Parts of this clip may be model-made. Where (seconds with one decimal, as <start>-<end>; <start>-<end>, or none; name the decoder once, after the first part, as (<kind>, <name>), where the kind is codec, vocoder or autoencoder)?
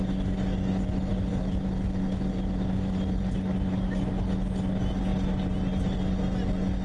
1.1-1.6 (vocoder, BigVGAN v2)